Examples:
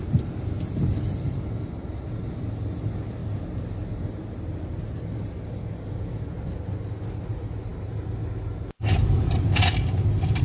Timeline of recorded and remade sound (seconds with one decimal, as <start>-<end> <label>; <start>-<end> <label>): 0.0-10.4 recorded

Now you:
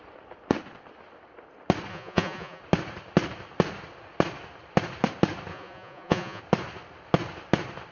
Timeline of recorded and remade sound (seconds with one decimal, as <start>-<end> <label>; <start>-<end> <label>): 0.0-1.9 recorded; 1.9-2.6 remade; 2.6-5.5 recorded; 5.5-6.4 remade; 6.4-7.9 recorded

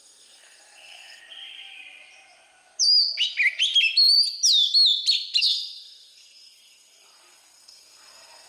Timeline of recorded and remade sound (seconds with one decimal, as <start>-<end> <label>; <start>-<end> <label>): 0.0-1.2 remade; 1.2-5.4 recorded; 5.4-8.5 remade

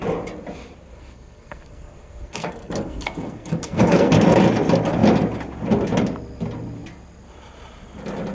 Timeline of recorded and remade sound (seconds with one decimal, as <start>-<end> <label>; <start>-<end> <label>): 0.0-0.9 recorded; 0.9-4.1 remade; 4.1-8.3 recorded

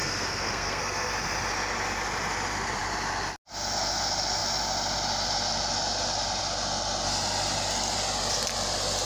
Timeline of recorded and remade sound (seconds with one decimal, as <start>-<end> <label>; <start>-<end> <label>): 0.0-1.1 remade; 1.1-9.0 recorded

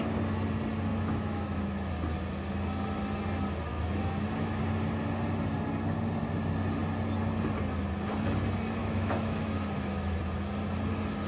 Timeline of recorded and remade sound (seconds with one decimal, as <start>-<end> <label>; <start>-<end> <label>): 0.0-0.9 recorded; 0.9-1.9 remade; 1.9-3.7 recorded; 3.7-4.6 remade; 4.6-8.8 recorded; 8.8-10.2 remade; 10.2-11.3 recorded